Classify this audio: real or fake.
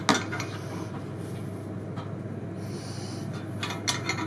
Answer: real